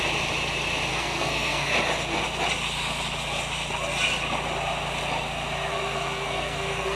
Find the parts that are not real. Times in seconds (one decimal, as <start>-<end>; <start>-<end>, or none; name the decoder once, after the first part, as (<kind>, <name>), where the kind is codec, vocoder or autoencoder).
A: 0.9-1.7 (codec, SNAC); 5.7-7.0